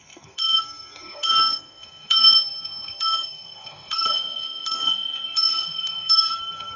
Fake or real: fake